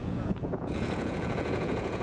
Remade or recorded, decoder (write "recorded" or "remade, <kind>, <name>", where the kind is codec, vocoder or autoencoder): remade, vocoder, Vocos